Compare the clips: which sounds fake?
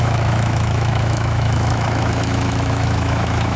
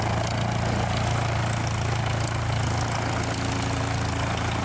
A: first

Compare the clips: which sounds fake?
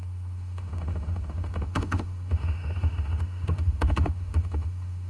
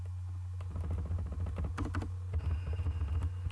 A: first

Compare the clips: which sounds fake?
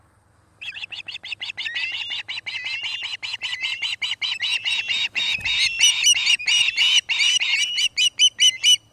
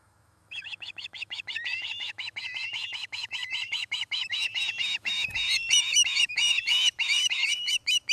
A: second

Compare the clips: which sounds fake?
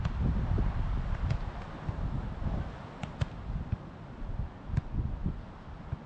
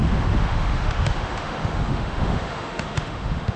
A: second